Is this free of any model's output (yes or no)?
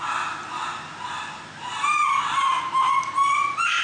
yes